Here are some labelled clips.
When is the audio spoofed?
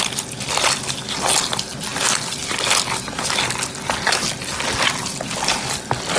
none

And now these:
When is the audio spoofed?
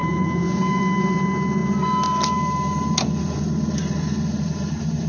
0.0-0.8 (vocoder, Vocos)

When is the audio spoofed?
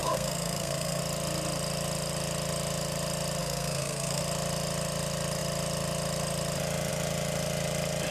0.0-1.0 (codec, SNAC); 3.4-4.2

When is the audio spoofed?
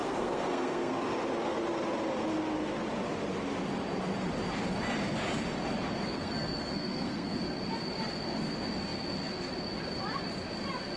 0.0-0.9 (codec, SNAC); 6.1-7.4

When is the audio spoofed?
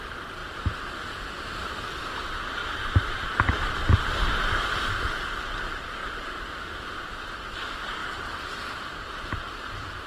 2.6-3.5 (vocoder, BigVGAN v2); 6.0-6.6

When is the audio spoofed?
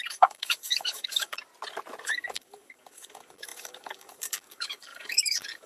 0.0-1.5 (codec, DAC); 2.0-5.7